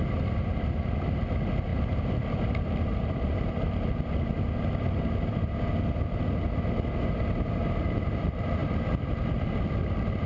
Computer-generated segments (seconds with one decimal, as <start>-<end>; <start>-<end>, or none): 1.7-3.5